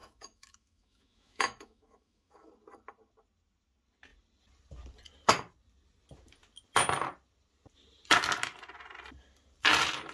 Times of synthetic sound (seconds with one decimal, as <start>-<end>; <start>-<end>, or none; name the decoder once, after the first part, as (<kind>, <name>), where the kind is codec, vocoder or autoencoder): 0.0-2.5 (autoencoder, DAC-VAE)